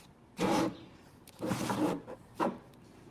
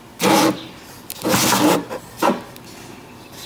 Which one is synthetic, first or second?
first